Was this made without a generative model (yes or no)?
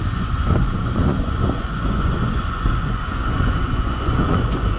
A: no